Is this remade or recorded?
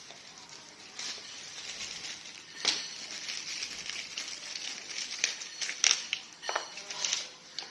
recorded